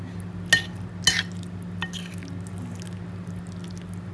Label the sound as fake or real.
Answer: real